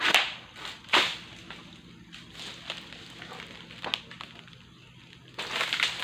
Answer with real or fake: real